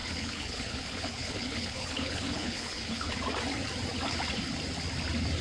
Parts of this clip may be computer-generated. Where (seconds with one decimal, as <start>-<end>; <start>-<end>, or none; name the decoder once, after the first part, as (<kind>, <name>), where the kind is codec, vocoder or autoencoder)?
0.0-3.2 (codec, HILCodec)